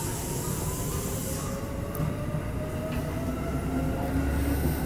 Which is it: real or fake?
real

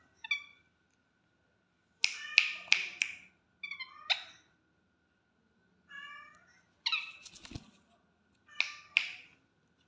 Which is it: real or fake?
real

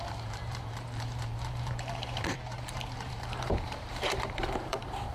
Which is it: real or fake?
fake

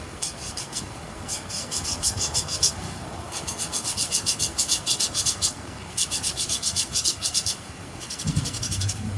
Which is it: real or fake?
fake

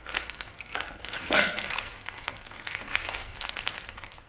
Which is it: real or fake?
fake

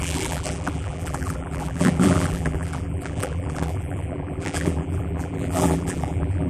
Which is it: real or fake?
fake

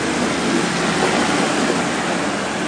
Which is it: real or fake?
real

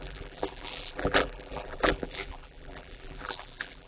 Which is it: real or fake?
fake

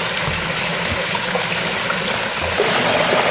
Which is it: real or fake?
real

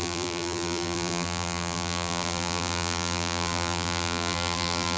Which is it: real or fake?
fake